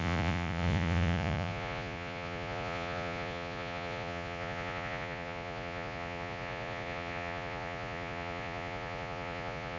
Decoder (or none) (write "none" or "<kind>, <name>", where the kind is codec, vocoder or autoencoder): vocoder, Vocos